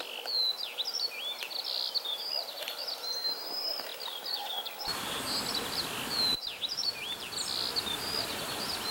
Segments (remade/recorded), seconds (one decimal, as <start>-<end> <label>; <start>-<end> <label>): 0.0-3.9 recorded; 3.9-7.1 remade; 7.1-8.9 recorded